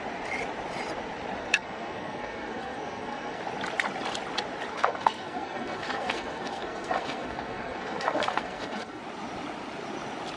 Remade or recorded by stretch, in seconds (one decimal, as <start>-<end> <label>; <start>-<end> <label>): 0.0-1.4 recorded; 1.4-3.4 remade; 3.4-4.7 recorded; 4.7-9.0 remade; 9.0-10.4 recorded